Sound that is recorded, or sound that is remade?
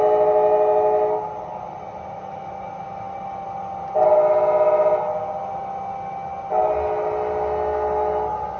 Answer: recorded